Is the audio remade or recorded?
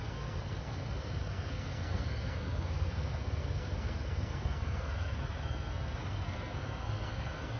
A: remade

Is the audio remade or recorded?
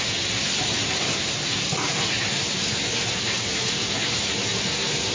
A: recorded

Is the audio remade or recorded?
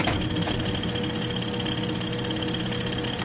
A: recorded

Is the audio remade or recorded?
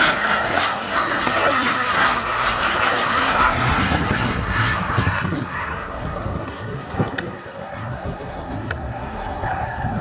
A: remade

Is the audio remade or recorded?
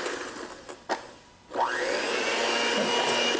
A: recorded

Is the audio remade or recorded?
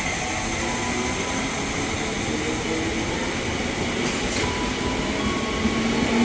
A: recorded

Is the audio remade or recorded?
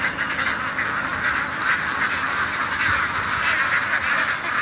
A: recorded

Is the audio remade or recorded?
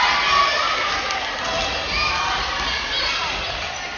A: recorded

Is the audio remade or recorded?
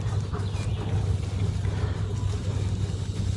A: recorded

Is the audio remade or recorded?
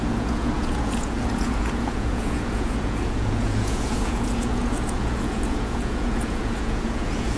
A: remade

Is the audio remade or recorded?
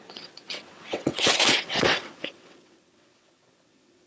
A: remade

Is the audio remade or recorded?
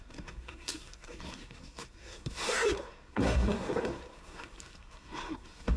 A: remade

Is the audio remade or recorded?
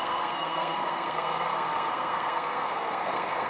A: remade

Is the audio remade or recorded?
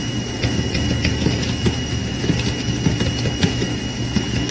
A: remade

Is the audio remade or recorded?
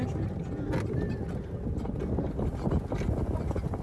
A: recorded